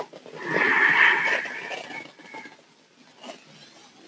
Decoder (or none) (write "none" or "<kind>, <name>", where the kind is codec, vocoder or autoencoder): none